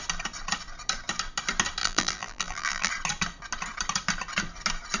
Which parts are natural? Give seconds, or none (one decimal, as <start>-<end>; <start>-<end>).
0.0-1.8; 2.9-5.0